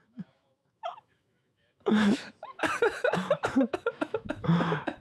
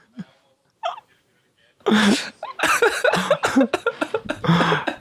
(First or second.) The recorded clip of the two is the second